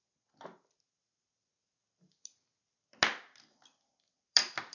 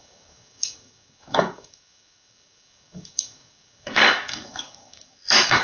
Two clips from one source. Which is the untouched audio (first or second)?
first